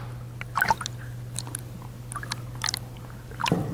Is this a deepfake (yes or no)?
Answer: no